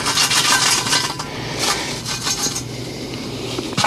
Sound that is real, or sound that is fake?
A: fake